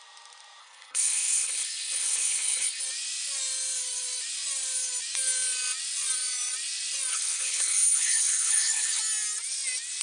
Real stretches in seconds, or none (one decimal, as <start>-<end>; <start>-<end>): 0.0-0.6; 2.8-7.1; 9.0-10.0

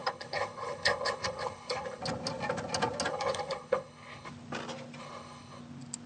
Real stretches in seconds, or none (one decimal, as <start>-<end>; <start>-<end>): 2.0-3.1; 4.3-5.0; 5.6-6.1

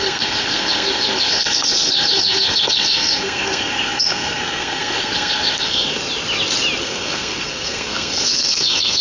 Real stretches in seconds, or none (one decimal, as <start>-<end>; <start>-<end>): 6.0-6.8

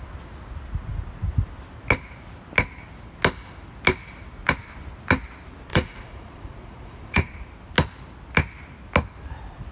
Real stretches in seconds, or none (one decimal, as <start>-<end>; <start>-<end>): 0.0-5.7; 7.3-9.7

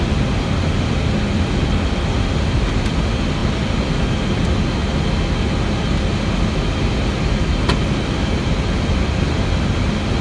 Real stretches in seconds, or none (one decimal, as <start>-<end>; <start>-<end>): 0.0-10.2

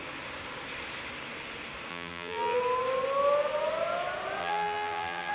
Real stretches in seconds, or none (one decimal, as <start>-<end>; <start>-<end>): 0.0-1.9; 2.6-4.4

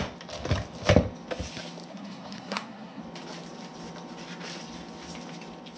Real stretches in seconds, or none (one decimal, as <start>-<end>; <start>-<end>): 0.0-1.9; 3.0-5.8